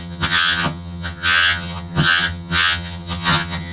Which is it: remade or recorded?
remade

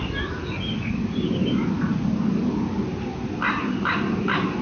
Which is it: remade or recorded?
recorded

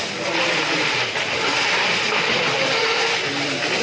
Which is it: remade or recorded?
recorded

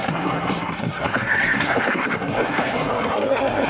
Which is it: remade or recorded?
remade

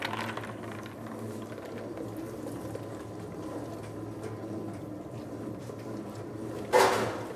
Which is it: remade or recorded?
recorded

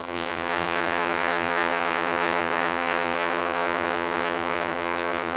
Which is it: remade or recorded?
remade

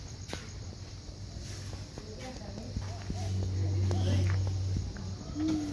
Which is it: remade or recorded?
recorded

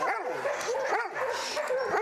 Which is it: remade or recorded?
recorded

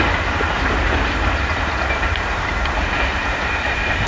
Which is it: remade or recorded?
remade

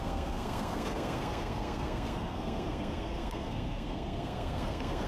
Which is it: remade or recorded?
remade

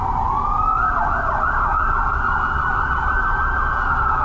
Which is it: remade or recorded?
recorded